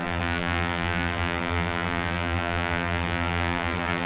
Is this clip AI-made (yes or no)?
yes